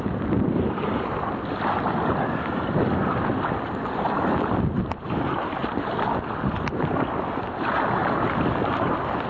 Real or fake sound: real